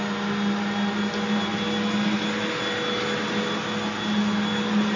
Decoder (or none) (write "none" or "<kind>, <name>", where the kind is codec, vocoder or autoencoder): none